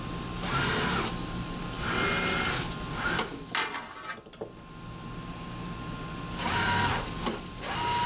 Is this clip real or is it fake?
real